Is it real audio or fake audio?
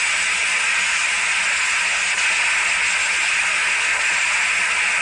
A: real